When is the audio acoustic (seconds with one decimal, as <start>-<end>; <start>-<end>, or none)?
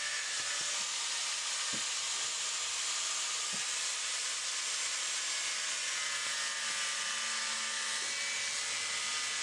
0.0-9.4